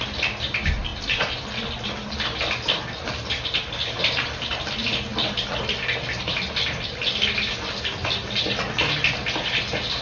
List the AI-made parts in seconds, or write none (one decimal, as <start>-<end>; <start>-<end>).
none